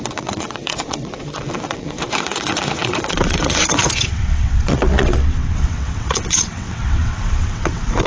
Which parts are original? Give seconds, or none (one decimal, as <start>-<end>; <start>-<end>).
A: none